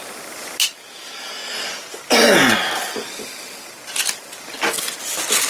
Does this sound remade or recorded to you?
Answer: recorded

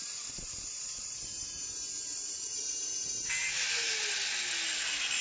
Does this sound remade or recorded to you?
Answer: recorded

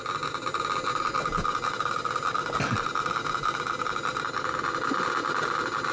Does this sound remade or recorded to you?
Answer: recorded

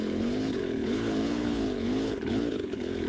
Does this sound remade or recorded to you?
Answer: remade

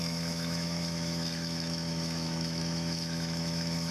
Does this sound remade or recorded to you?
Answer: remade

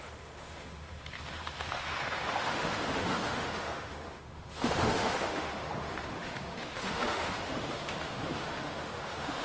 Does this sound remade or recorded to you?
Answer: remade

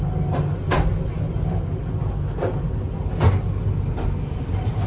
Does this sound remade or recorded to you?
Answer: recorded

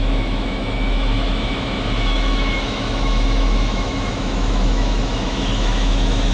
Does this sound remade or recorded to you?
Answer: remade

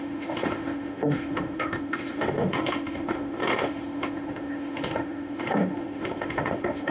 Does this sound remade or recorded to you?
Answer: remade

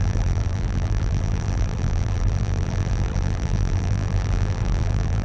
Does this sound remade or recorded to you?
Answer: remade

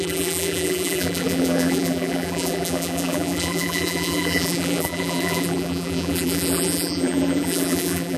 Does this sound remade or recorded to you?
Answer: remade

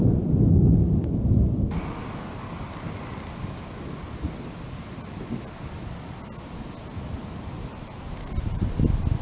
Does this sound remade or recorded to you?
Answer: recorded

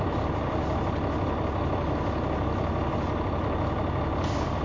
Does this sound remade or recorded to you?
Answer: recorded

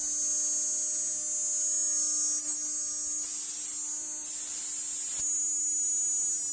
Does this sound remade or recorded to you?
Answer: recorded